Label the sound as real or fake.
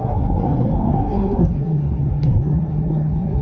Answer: fake